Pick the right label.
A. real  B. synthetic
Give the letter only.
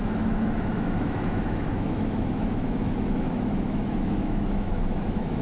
B